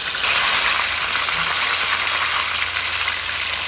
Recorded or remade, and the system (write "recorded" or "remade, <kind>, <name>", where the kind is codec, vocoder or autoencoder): recorded